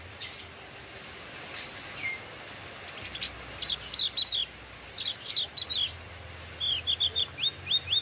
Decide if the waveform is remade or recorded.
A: recorded